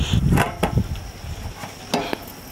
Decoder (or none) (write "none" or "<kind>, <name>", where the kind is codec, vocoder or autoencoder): none